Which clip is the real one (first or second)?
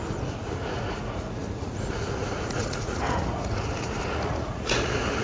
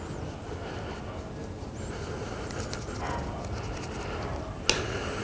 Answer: second